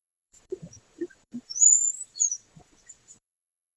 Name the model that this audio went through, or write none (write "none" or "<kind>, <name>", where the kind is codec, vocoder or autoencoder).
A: vocoder, Vocos